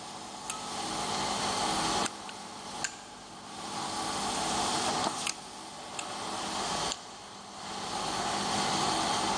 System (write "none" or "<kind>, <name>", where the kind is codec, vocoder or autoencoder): none